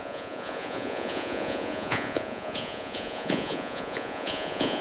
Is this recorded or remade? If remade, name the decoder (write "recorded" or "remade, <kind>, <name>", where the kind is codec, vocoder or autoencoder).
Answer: remade, vocoder, Vocos